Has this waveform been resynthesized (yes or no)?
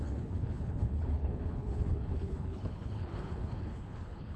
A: yes